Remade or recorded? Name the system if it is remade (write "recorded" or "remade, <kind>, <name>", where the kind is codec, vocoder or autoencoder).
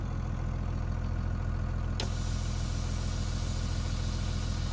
recorded